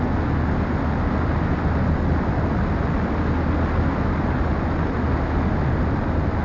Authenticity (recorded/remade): recorded